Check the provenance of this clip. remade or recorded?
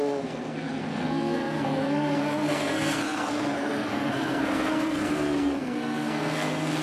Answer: remade